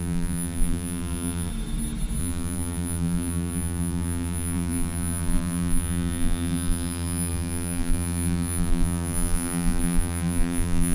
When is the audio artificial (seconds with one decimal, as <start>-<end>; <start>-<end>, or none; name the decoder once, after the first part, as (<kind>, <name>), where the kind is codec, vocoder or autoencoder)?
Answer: 0.0-1.5 (vocoder, BigVGAN v2); 2.2-10.9